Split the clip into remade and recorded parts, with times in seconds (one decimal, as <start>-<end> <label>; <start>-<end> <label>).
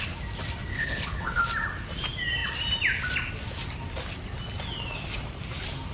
0.0-0.7 recorded; 0.7-1.4 remade; 1.4-5.9 recorded